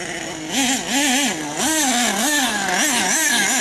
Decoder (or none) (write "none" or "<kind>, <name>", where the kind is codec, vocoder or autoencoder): none